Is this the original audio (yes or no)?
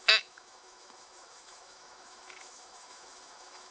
no